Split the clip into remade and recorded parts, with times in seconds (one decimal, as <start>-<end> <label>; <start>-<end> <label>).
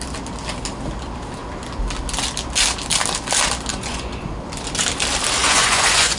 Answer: 0.0-3.7 recorded; 3.7-4.3 remade; 4.3-5.4 recorded; 5.4-6.2 remade